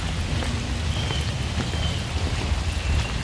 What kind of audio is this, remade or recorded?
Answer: recorded